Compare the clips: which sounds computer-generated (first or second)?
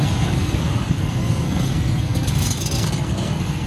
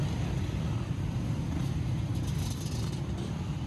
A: first